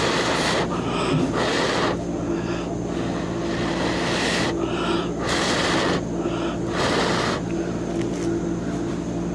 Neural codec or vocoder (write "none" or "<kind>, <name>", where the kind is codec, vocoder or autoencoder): none